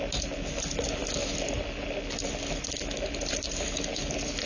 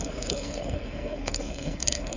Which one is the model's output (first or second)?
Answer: second